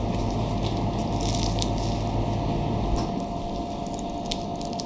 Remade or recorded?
recorded